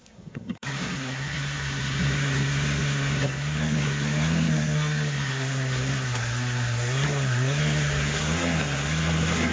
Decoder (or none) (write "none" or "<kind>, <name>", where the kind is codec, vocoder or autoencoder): codec, SNAC